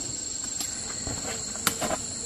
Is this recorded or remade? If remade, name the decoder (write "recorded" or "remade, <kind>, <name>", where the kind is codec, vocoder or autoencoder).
recorded